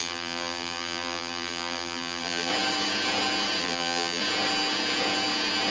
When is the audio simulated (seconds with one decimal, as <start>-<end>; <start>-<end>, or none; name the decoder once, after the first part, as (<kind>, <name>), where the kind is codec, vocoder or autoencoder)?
0.0-2.5 (vocoder, BigVGAN v2); 3.6-4.2

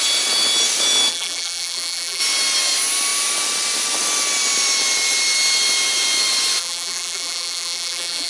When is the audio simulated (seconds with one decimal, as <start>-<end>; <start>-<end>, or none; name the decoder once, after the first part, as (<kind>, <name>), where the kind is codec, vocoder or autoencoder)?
1.1-2.2 (vocoder, BigVGAN v2); 6.6-8.3

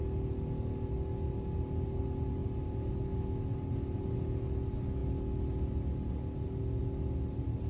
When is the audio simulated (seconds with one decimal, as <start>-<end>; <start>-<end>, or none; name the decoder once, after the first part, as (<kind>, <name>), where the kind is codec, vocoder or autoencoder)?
none

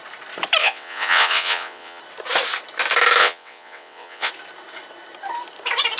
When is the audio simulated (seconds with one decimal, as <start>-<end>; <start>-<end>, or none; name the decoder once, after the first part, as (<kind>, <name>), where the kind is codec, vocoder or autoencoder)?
0.6-2.0 (vocoder, WaveNeXt); 3.2-4.3

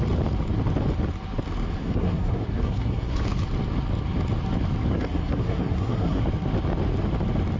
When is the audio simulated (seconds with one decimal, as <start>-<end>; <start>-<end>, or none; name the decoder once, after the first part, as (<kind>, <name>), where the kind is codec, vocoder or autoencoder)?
1.8-3.2 (codec, SNAC); 4.9-6.2

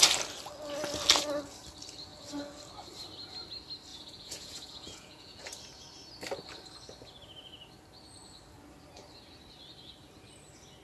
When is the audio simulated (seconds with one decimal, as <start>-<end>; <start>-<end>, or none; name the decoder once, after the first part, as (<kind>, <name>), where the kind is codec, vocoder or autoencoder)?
3.9-5.4 (vocoder, Vocos)